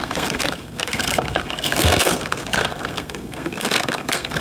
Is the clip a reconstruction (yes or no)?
yes